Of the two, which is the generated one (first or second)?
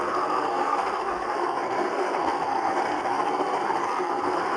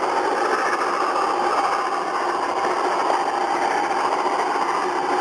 first